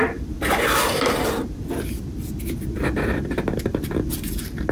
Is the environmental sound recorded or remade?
remade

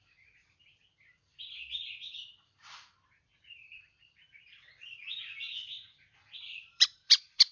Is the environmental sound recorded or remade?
remade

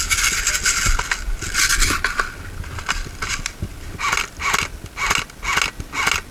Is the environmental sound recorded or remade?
recorded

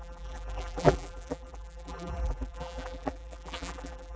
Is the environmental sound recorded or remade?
remade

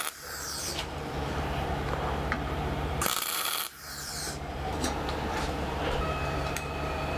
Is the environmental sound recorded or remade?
remade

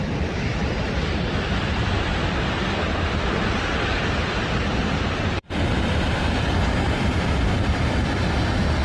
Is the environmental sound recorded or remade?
remade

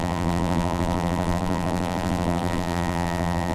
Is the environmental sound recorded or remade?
remade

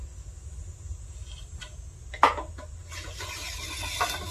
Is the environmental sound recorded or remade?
recorded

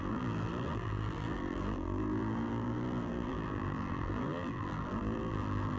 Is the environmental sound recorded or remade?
remade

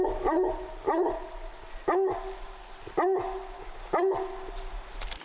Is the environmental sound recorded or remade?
recorded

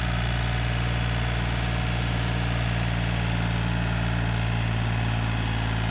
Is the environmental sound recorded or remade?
recorded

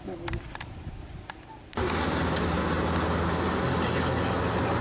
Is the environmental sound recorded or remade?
recorded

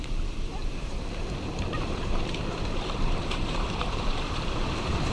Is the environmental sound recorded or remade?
remade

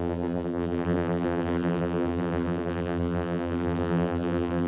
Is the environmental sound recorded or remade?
remade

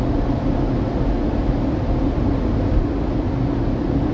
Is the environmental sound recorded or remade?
recorded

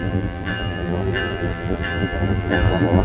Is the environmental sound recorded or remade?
remade